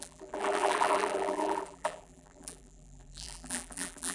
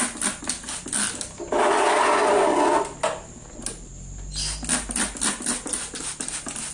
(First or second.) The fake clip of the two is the first